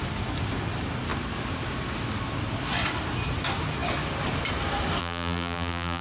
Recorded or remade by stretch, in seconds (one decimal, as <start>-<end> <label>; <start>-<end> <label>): 0.0-5.0 recorded; 5.0-6.0 remade